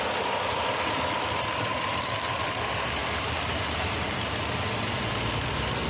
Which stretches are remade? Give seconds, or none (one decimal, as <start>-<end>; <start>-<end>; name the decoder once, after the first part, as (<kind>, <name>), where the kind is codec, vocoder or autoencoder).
3.0-4.3 (vocoder, BigVGAN v2)